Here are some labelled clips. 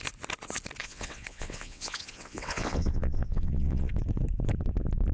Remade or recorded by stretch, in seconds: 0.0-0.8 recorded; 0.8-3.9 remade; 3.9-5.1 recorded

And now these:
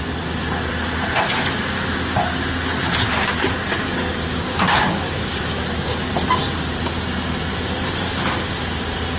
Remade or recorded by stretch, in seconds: 0.0-3.1 recorded; 3.1-6.1 remade; 6.1-9.2 recorded

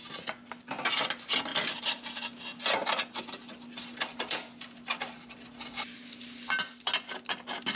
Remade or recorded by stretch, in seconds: 0.0-7.8 recorded

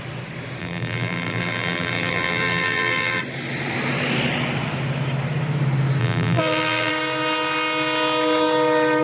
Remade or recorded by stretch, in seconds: 0.0-0.6 recorded; 0.6-3.2 remade; 3.2-6.0 recorded; 6.0-6.9 remade; 6.9-9.0 recorded